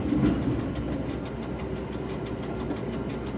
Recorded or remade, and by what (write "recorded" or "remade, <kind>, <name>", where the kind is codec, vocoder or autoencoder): recorded